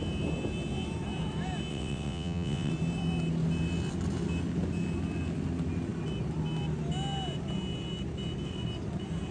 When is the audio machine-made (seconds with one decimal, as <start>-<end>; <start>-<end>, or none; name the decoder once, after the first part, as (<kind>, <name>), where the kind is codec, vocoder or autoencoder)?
1.7-2.7 (vocoder, WaveNeXt)